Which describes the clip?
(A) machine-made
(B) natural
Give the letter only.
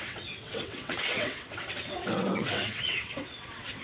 A